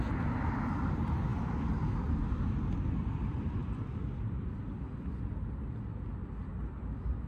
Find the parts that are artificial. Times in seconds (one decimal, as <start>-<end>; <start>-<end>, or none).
3.6-4.6